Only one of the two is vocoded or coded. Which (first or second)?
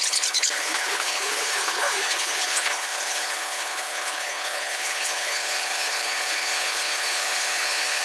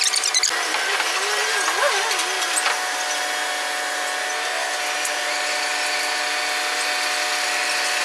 first